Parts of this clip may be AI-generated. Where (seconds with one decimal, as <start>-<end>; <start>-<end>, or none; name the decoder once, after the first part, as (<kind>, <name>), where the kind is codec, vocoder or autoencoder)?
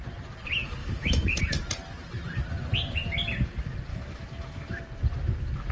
0.8-1.4 (autoencoder, DAC-VAE); 3.9-4.8